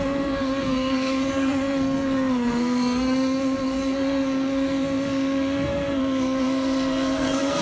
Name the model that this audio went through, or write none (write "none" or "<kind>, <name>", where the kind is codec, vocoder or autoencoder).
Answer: codec, SNAC